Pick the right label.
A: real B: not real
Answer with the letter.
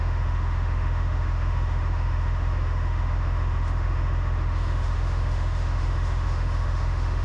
B